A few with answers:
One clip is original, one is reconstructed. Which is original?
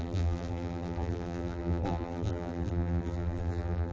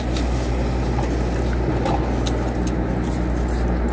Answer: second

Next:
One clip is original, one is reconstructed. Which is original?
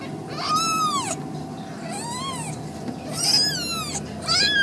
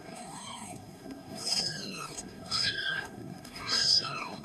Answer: first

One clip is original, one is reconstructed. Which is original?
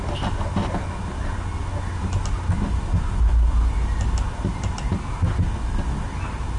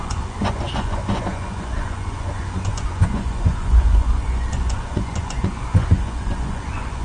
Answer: first